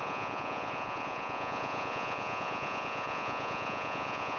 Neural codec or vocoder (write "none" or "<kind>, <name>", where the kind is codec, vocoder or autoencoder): vocoder, Vocos